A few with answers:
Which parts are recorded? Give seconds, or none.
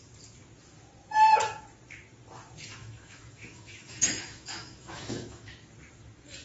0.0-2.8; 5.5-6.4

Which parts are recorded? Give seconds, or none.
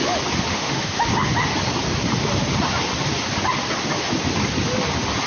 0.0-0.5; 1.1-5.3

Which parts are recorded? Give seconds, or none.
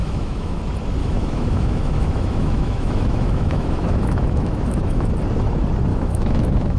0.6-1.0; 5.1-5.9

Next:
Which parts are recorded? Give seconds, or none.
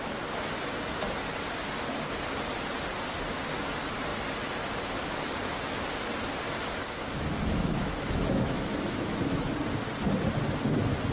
0.0-6.8; 9.5-11.1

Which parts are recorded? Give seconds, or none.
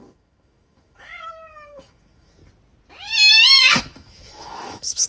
2.4-3.8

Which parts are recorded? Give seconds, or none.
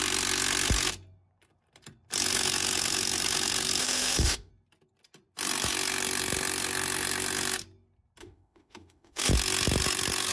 0.0-3.8; 4.5-8.2; 9.3-10.3